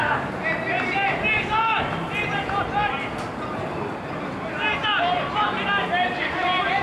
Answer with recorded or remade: recorded